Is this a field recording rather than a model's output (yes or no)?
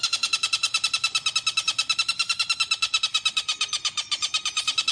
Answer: yes